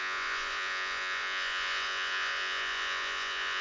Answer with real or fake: fake